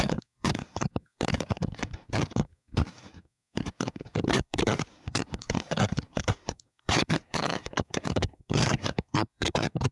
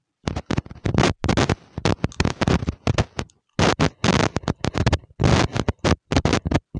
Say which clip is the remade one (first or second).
first